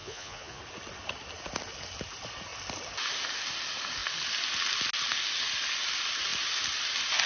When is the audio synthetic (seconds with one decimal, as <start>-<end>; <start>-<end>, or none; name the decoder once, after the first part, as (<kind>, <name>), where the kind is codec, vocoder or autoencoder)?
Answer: 0.0-0.6 (vocoder, Vocos)

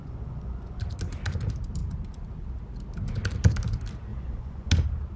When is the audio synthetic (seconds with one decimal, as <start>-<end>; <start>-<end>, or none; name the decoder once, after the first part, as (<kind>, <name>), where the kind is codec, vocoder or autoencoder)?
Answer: 0.0-0.8 (vocoder, Vocos); 4.1-4.7

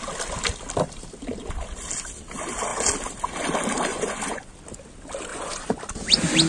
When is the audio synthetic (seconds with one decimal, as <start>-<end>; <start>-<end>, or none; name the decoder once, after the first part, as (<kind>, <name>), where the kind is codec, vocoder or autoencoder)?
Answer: 3.9-4.5 (vocoder, Vocos); 5.3-5.8

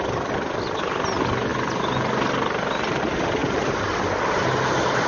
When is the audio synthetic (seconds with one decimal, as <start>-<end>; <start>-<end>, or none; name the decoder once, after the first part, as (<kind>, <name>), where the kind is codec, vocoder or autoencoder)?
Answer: none

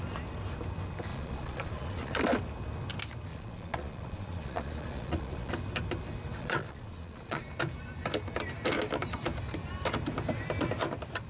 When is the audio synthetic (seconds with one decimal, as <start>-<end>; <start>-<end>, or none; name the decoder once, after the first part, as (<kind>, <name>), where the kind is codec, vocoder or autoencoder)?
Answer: 1.1-2.1 (vocoder, Vocos); 3.3-5.5; 6.4-7.4